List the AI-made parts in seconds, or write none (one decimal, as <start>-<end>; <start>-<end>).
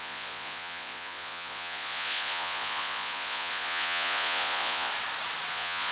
0.0-4.9; 5.5-5.9